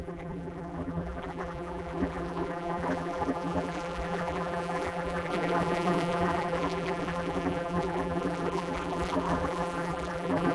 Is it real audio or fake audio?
fake